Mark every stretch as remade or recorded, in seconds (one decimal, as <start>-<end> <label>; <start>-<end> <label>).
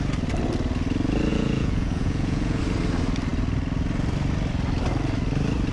0.0-1.3 recorded; 1.3-2.6 remade; 2.6-5.7 recorded